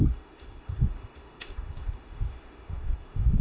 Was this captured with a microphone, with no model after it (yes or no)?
no